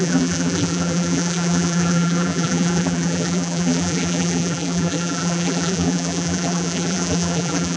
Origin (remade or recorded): remade